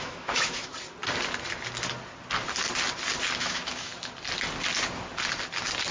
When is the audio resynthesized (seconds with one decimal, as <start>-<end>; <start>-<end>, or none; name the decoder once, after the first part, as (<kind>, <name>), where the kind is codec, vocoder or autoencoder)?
0.0-0.7 (autoencoder, DAC-VAE); 3.4-3.9